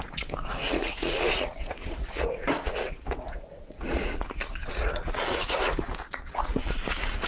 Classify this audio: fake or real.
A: fake